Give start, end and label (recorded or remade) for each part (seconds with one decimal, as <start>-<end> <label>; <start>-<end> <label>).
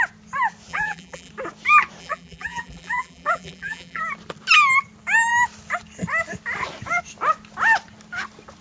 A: 0.0-0.7 recorded; 0.7-1.3 remade; 1.3-2.0 recorded; 2.0-4.0 remade; 4.0-8.6 recorded